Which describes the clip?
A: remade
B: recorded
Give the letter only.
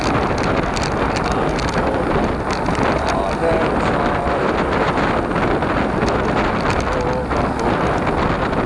B